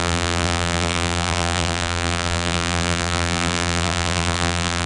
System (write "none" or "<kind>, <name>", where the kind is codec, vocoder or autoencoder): vocoder, BigVGAN v2